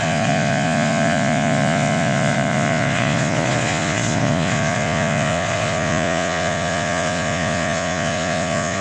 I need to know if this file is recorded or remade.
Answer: remade